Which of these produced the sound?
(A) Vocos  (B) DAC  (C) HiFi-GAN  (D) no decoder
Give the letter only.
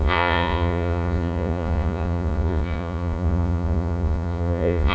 A